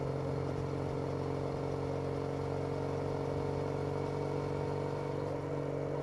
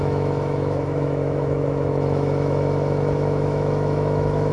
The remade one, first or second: second